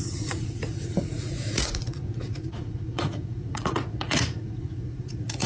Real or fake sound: fake